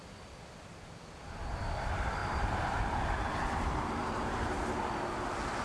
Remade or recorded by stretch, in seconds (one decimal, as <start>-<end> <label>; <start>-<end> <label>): 0.0-0.7 recorded; 0.7-1.6 remade; 1.6-2.2 recorded; 2.2-3.1 remade; 3.1-4.0 recorded; 4.0-4.8 remade; 4.8-5.6 recorded